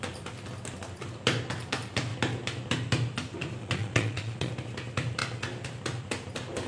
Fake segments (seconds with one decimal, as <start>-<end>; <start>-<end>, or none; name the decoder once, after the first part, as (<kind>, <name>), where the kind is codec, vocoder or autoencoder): 3.6-4.5 (vocoder, Vocos)